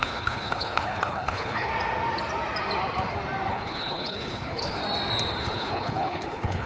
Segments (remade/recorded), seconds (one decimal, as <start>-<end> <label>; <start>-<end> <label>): 0.0-1.7 remade; 1.7-3.5 recorded; 3.5-4.8 remade; 4.8-5.4 recorded; 5.4-6.7 remade